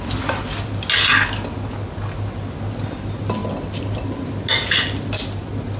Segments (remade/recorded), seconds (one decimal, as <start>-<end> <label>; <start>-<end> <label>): 0.0-5.8 recorded